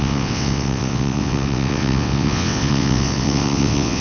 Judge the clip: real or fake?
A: fake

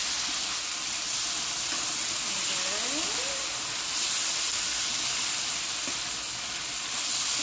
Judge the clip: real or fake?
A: real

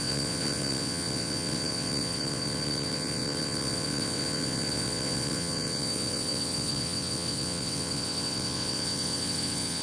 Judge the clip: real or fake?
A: fake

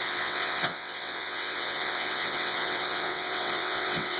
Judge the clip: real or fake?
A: fake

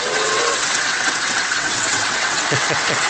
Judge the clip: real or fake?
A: fake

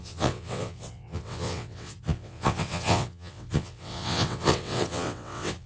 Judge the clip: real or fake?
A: fake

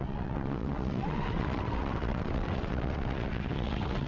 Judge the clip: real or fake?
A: fake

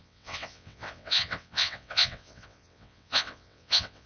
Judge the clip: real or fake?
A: fake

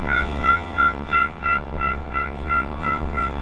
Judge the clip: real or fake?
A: fake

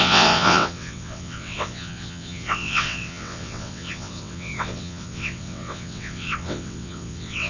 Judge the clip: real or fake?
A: fake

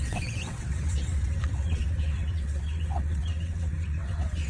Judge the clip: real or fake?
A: fake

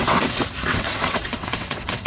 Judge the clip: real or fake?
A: fake